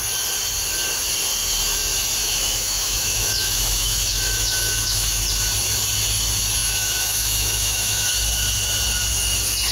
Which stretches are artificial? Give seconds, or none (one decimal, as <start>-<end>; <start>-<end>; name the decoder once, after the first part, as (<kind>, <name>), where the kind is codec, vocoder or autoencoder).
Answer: 2.2-5.2 (autoencoder, DAC-VAE); 6.6-8.1